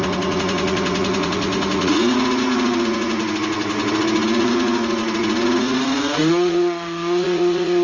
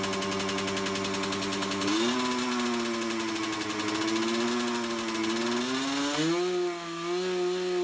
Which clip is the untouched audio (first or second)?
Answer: second